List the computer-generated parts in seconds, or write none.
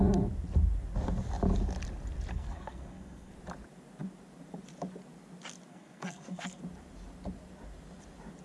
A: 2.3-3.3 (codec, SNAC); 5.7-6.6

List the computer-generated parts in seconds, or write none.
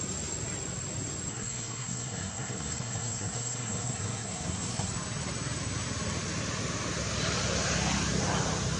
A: 1.3-4.9 (codec, SNAC)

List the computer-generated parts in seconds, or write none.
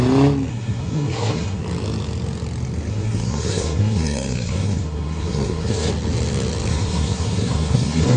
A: 0.5-1.6 (codec, SNAC); 2.9-5.9; 6.7-8.2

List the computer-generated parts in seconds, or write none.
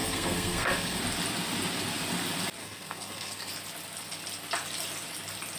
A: 0.0-1.0 (codec, SNAC); 2.6-3.5